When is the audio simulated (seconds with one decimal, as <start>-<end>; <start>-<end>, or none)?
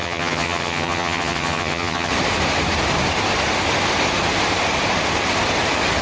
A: 0.0-2.1